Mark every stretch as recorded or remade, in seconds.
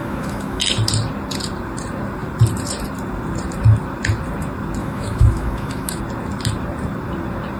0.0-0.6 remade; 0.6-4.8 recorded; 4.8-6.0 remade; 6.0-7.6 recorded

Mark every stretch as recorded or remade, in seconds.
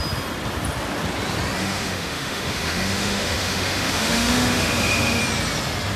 0.0-1.6 recorded; 1.6-5.2 remade; 5.2-6.0 recorded